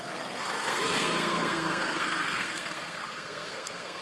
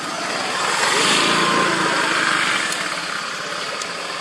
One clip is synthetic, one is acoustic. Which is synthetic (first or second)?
first